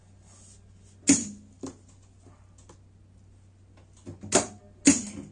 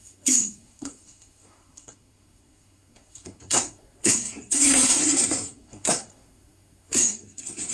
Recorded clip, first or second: first